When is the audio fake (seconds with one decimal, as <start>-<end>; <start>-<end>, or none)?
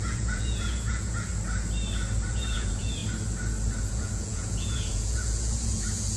0.0-1.3; 2.3-3.0; 3.8-6.2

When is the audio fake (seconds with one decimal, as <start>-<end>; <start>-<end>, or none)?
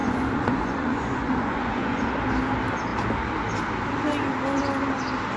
0.0-2.1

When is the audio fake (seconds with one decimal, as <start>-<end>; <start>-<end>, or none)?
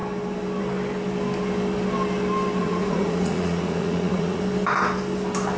2.6-4.4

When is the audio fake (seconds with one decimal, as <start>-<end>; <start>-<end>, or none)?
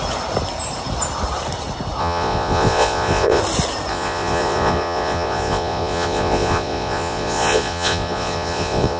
2.0-3.4; 3.9-9.0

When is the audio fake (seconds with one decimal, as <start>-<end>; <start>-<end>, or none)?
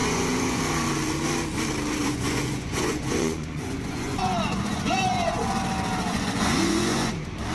0.0-0.6; 2.0-5.4; 6.1-7.1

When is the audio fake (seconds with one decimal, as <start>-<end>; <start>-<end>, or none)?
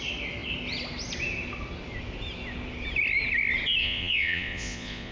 3.8-5.1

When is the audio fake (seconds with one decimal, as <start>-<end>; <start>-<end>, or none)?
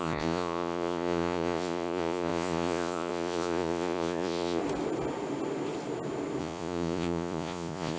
0.0-4.6; 6.4-8.0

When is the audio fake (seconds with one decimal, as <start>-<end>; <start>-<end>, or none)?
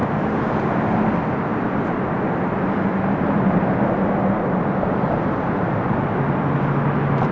none